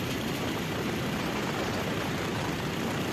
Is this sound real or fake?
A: fake